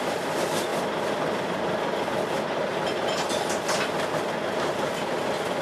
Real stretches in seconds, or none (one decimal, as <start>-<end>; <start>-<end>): 0.0-5.6